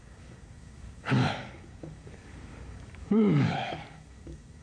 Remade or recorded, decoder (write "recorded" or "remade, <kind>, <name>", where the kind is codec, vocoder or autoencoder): remade, codec, DAC